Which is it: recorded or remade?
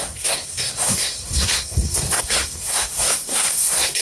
remade